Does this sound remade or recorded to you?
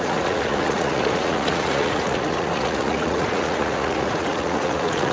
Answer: remade